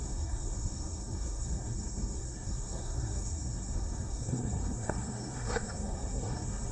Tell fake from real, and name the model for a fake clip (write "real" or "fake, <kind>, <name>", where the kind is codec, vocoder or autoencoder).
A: fake, codec, SNAC